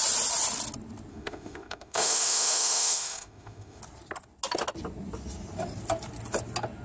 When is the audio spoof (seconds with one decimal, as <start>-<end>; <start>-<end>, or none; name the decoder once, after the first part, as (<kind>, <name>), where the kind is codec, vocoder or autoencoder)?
1.1-3.8 (autoencoder, DAC-VAE)